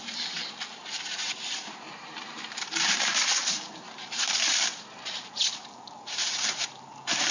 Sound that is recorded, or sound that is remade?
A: remade